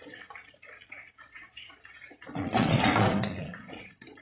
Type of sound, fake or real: fake